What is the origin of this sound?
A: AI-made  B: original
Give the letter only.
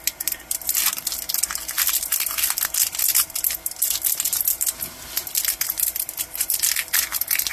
B